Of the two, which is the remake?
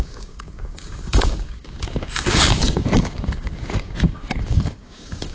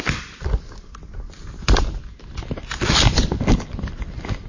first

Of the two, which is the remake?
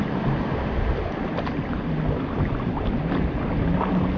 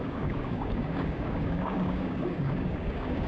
second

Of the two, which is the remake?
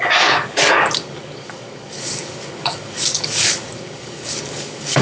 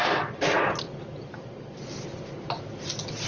first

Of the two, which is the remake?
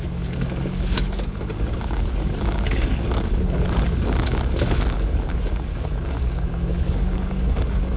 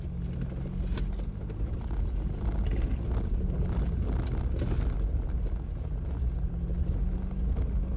first